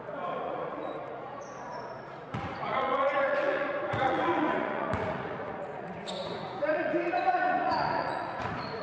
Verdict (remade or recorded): remade